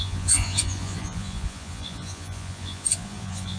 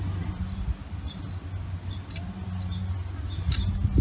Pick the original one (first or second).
second